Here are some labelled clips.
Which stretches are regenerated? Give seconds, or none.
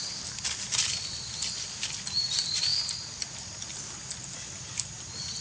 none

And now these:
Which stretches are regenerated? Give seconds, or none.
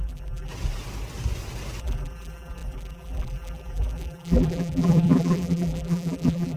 0.0-0.5 (vocoder, BigVGAN v2); 1.8-6.6